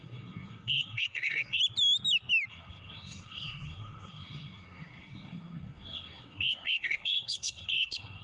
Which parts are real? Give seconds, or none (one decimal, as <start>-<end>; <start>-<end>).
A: 1.6-2.5